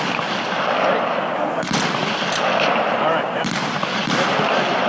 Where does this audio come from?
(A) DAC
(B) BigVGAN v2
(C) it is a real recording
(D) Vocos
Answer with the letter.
B